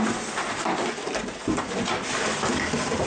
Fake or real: real